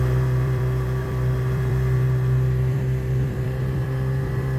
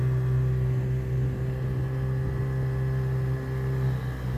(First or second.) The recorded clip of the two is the second